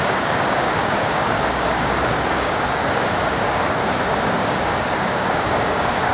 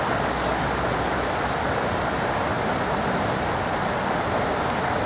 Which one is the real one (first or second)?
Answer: second